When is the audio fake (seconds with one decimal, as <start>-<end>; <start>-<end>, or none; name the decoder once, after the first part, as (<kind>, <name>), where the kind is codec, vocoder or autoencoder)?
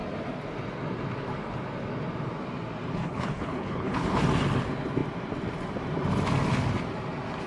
3.0-4.2 (codec, HILCodec)